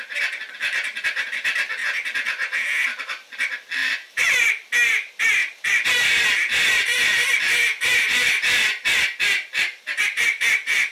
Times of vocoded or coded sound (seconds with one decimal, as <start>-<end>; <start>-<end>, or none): 0.0-1.8; 3.0-10.9